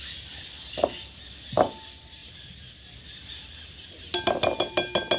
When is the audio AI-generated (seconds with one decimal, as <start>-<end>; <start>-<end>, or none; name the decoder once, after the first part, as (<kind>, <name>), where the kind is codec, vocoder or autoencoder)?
none